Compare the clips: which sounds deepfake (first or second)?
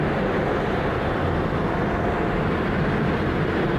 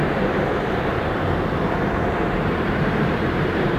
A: second